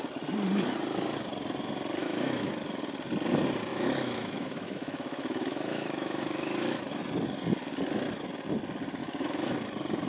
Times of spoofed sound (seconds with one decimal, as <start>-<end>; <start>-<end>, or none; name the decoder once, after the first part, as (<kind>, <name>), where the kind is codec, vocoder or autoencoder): 2.0-2.5 (autoencoder, DAC-VAE); 3.7-7.0; 9.0-9.5